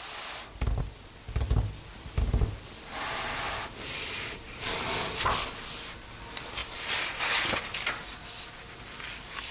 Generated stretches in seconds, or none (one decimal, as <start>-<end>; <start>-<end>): 2.9-4.7; 6.6-7.9

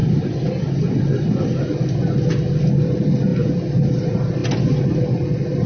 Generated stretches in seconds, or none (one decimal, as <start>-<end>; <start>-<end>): none

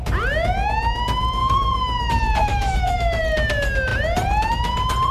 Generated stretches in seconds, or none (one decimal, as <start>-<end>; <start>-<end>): 1.4-2.1; 2.5-3.2

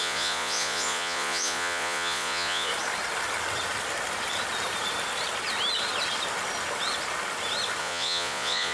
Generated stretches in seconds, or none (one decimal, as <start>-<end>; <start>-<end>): 0.0-2.7; 7.8-8.7

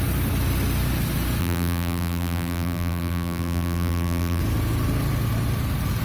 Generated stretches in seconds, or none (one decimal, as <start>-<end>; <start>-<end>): 1.4-4.4

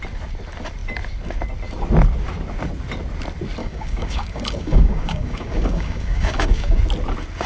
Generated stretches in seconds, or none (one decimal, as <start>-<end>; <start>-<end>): 3.6-6.8

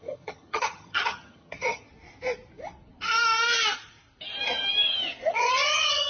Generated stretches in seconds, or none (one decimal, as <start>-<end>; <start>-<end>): 0.0-1.9; 5.3-6.1